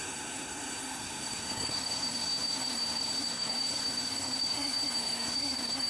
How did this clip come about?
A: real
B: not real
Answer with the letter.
B